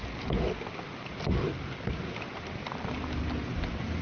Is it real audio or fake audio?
real